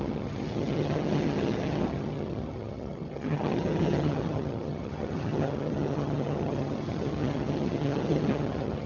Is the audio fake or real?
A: fake